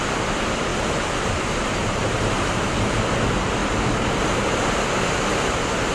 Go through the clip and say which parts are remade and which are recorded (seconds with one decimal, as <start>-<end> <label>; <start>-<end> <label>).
0.0-0.7 recorded; 0.7-3.0 remade; 3.0-5.9 recorded